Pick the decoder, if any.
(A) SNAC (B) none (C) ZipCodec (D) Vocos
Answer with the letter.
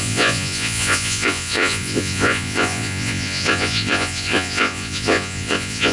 D